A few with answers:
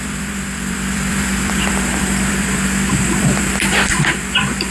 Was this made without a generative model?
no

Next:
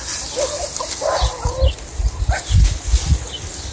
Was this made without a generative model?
yes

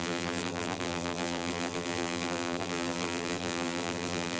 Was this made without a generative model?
no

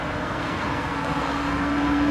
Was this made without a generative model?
no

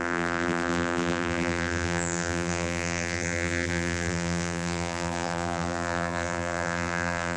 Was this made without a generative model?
no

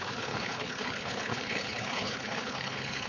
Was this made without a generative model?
no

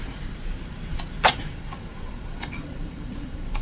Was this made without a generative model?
no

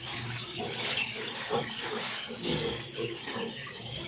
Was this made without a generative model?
no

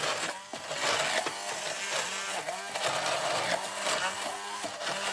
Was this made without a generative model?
yes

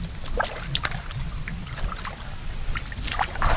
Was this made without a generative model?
yes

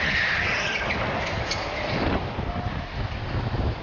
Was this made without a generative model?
yes